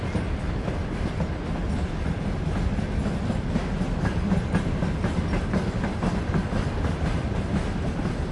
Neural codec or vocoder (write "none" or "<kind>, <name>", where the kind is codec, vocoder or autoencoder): none